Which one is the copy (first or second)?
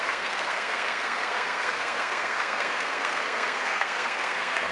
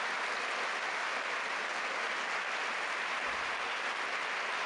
first